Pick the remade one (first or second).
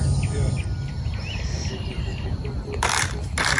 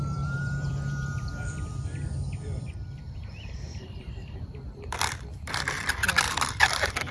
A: second